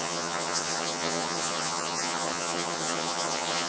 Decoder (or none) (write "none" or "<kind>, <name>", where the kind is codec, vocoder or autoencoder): vocoder, HiFi-GAN